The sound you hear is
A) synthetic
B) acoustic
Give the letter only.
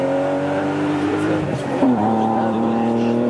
A